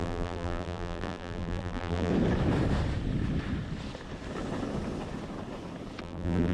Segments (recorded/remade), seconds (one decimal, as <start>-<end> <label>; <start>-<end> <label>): 0.0-2.1 remade; 2.1-6.0 recorded; 6.0-6.5 remade